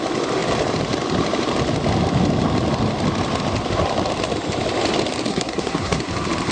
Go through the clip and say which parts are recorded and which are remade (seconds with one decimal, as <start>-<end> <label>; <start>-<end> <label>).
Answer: 0.0-5.3 recorded; 5.3-6.0 remade; 6.0-6.5 recorded